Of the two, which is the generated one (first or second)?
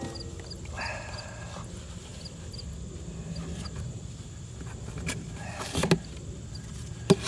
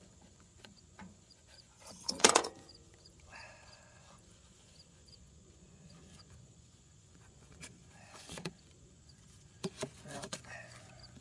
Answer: second